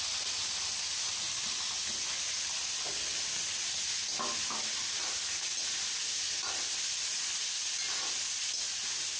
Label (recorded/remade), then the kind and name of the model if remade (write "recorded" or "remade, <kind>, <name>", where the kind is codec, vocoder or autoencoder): recorded